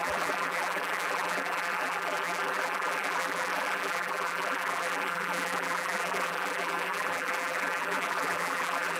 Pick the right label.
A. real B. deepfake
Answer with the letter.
B